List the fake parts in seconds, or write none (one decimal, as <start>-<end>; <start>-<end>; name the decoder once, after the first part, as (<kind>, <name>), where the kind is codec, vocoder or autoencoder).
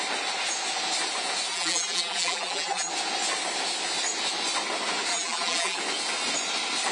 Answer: 1.5-2.9 (vocoder, BigVGAN v2); 5.1-5.8